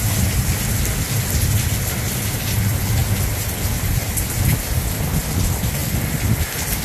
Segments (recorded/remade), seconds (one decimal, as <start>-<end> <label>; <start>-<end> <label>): 0.0-6.8 recorded